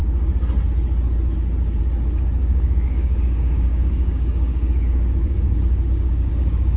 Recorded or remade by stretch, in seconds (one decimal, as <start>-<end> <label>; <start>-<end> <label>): 0.0-2.4 recorded; 2.4-6.8 remade